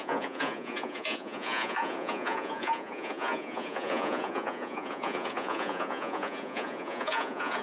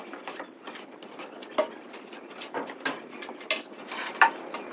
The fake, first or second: first